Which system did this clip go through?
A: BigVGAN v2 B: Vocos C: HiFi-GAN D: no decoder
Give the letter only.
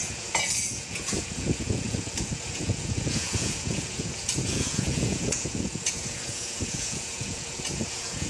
B